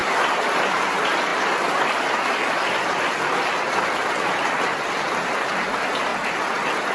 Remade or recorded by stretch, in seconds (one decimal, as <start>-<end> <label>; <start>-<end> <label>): 0.0-0.6 remade; 0.6-1.3 recorded; 1.3-5.4 remade; 5.4-6.1 recorded; 6.1-6.9 remade